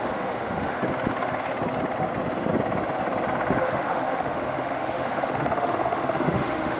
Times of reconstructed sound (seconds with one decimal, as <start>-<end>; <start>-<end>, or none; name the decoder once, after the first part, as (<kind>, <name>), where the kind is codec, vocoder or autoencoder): 0.0-0.8 (autoencoder, DAC-VAE); 3.6-6.8